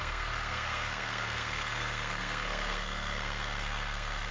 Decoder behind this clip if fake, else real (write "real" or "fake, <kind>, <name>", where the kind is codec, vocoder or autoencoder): fake, codec, SNAC